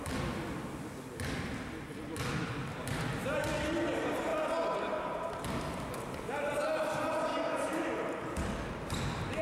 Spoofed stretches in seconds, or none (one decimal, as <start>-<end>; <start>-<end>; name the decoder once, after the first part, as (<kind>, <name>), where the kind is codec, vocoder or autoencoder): 2.7-3.4 (vocoder, BigVGAN v2); 7.3-8.6